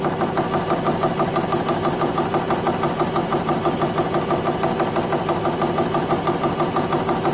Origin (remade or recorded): recorded